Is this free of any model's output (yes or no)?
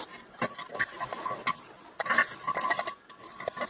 yes